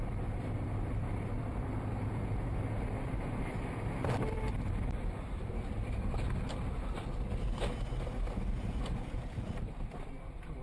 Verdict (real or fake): fake